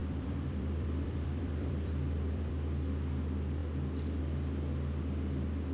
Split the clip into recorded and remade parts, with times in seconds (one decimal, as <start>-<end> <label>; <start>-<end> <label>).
0.0-2.5 remade; 2.5-5.7 recorded